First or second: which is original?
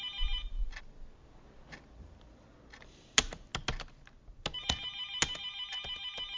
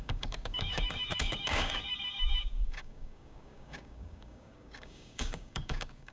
first